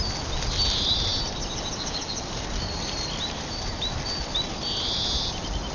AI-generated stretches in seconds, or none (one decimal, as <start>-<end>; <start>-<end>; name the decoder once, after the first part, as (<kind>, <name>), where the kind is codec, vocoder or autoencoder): none